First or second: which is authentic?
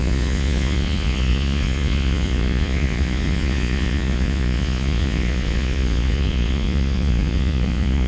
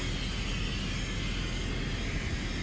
second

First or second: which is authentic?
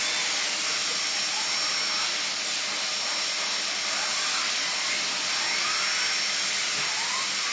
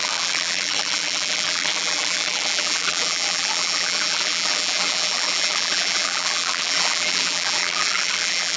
first